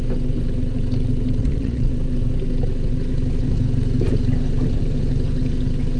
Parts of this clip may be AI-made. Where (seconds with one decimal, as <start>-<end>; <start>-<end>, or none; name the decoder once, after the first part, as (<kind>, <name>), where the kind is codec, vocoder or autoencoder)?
1.4-1.9 (vocoder, Vocos)

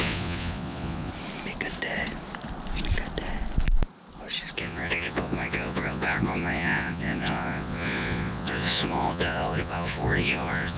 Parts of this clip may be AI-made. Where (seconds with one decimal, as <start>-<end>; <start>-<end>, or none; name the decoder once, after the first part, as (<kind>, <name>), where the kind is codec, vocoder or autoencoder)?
0.0-1.1 (vocoder, Vocos); 4.6-10.8

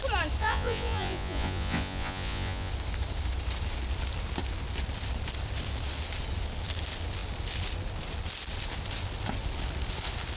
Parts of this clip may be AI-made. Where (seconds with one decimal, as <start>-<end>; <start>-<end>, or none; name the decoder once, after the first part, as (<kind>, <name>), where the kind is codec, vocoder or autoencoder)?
0.4-2.7 (vocoder, Vocos)